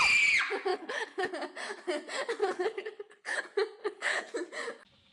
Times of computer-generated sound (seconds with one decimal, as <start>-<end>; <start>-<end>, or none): 0.7-1.3; 2.4-3.4; 3.8-4.3

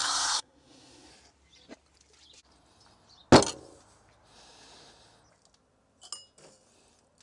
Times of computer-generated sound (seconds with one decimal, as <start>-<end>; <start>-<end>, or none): 0.0-1.1

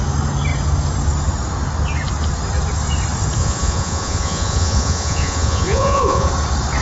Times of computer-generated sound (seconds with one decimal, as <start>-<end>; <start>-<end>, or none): 3.4-6.3

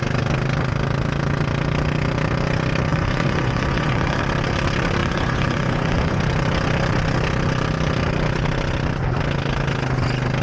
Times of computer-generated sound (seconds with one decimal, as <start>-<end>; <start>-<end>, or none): 2.9-4.2; 5.0-6.2

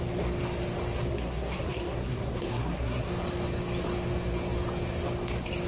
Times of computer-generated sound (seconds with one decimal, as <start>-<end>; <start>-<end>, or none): 1.1-3.1

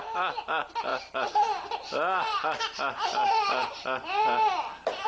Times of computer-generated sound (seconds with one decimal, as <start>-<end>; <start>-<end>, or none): none

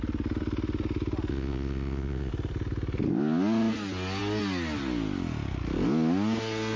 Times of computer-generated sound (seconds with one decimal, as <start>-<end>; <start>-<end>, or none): 1.3-2.3

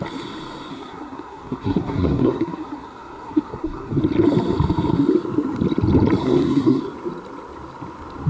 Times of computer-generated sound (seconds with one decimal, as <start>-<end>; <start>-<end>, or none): 0.7-4.0; 6.2-6.8